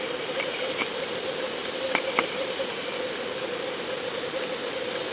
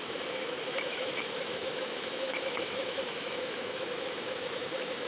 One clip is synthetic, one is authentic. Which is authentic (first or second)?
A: first